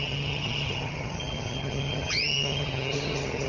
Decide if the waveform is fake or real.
fake